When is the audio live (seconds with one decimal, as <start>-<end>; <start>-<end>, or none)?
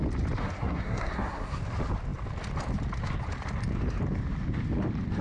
0.0-0.4; 1.6-5.2